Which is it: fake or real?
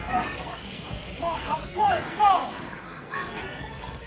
fake